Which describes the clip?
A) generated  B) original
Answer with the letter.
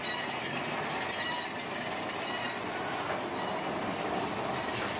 B